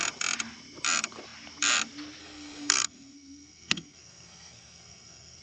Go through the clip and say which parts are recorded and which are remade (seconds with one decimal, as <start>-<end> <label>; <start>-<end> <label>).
0.0-2.2 recorded; 2.2-5.4 remade